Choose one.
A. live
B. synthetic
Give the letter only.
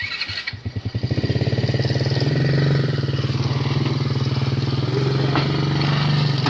A